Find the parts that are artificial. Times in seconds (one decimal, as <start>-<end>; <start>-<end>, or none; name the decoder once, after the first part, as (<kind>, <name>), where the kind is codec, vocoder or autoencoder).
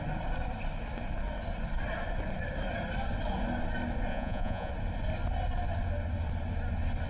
4.1-4.7 (vocoder, Vocos)